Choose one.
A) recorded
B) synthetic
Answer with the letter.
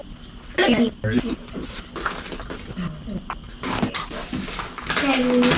A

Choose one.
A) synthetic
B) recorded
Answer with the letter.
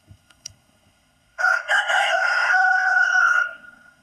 A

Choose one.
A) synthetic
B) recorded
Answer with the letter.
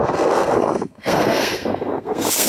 A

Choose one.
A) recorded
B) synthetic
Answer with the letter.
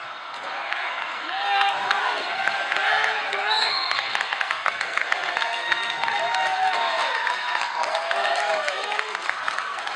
B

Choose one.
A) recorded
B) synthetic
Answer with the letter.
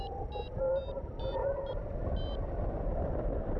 A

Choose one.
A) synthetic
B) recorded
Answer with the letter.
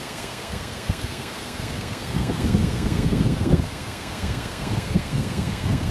A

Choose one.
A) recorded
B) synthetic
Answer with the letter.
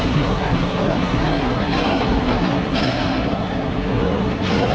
B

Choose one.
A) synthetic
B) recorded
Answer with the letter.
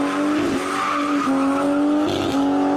B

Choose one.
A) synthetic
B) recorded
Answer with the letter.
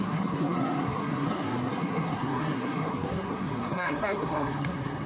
A